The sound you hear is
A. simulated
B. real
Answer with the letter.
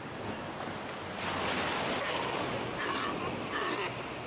B